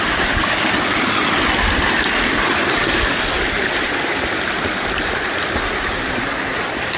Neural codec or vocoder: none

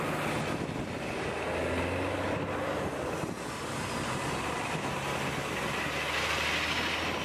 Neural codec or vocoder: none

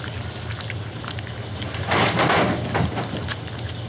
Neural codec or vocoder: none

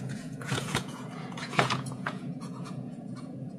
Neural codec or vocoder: vocoder, Vocos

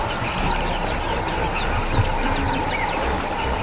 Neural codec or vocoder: none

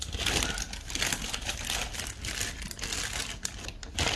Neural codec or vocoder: none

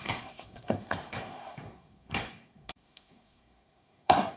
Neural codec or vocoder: codec, SNAC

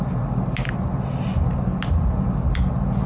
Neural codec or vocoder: none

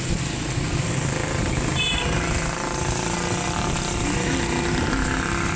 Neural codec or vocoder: none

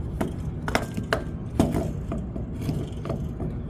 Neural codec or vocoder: none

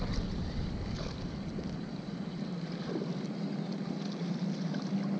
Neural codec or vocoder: none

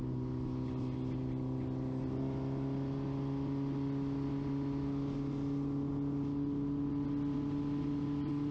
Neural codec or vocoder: none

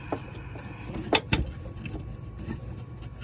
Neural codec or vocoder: none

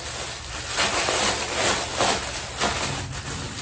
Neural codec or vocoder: none